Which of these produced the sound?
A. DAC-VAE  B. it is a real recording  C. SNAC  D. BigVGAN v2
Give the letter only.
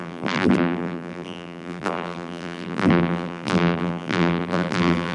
D